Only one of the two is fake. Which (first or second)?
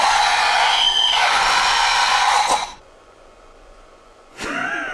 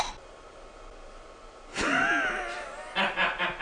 first